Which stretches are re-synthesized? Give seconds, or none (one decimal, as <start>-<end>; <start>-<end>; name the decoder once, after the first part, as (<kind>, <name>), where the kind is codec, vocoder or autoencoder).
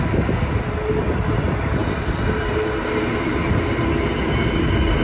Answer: none